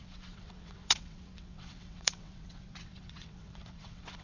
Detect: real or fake fake